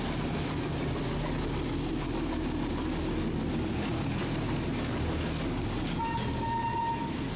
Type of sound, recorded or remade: recorded